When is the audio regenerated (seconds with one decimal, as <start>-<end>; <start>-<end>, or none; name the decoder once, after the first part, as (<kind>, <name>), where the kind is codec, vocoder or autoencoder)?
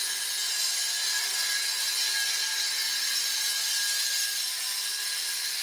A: none